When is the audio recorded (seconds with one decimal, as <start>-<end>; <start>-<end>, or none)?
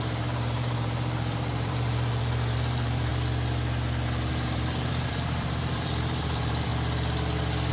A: 3.1-4.3; 6.7-7.7